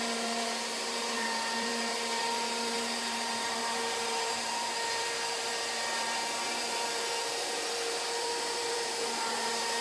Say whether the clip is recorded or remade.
remade